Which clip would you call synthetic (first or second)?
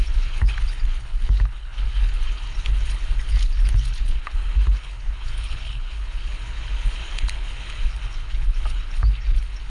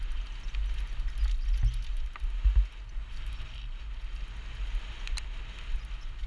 first